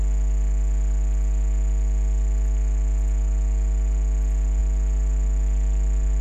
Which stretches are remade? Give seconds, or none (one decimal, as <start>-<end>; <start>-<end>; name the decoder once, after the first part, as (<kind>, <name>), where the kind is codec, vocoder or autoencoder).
none